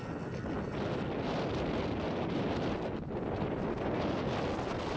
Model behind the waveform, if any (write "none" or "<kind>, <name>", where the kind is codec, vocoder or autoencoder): none